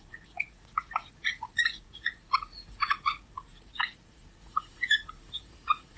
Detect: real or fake fake